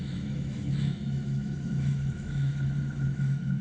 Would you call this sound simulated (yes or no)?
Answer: yes